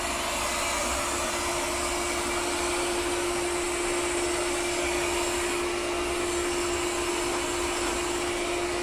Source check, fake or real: real